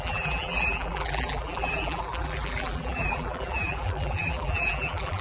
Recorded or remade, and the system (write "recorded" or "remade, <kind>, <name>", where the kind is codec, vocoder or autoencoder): remade, vocoder, BigVGAN v2